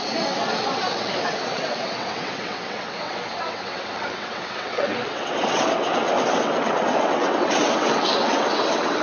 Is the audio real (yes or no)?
no